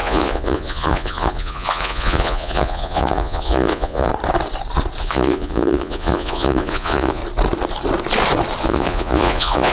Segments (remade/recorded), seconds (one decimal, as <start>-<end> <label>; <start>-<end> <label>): 0.0-4.1 remade; 4.1-5.0 recorded; 5.0-7.2 remade; 7.2-8.6 recorded; 8.6-9.7 remade